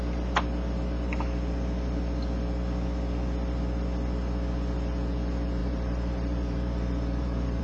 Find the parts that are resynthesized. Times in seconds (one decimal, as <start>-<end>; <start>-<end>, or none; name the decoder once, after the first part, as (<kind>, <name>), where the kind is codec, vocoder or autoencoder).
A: 5.6-7.6 (vocoder, BigVGAN v2)